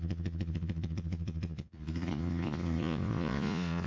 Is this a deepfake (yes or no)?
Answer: yes